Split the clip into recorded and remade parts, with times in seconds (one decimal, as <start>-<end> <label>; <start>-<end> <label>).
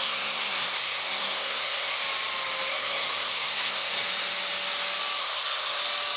0.0-2.0 remade; 2.0-2.7 recorded; 2.7-3.9 remade; 3.9-5.2 recorded; 5.2-5.8 remade; 5.8-6.2 recorded